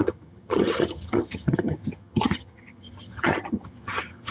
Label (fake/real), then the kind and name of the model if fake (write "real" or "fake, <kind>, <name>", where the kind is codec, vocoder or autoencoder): fake, vocoder, HiFi-GAN